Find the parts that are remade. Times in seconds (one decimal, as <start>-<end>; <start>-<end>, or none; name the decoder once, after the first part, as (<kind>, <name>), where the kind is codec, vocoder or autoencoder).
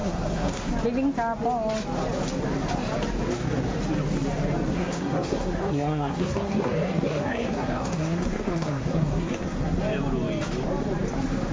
0.0-0.7 (codec, SNAC); 4.7-9.8